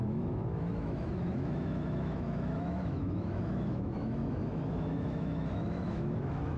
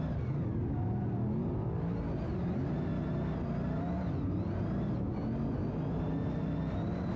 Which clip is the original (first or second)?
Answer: second